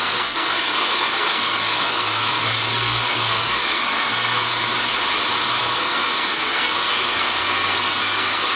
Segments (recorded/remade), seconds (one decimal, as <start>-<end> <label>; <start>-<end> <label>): 0.0-4.7 remade; 4.7-5.6 recorded; 5.6-8.6 remade